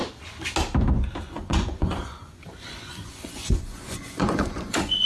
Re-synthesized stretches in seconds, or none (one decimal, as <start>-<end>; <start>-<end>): 1.2-5.1